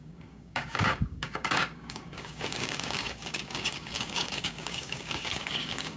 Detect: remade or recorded remade